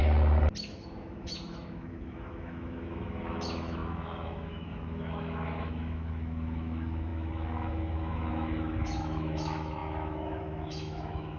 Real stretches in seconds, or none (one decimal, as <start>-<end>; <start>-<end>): 0.0-0.6